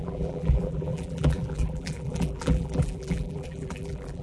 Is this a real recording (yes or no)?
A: no